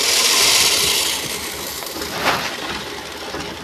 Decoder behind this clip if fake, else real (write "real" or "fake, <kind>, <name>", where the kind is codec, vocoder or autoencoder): real